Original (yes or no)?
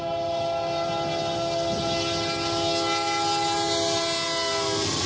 yes